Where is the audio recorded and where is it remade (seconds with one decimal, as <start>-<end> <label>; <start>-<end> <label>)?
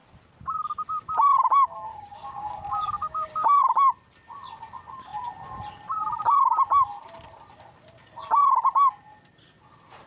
0.0-1.9 recorded; 1.9-3.6 remade; 3.6-10.1 recorded